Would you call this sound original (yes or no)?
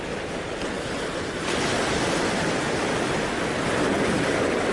yes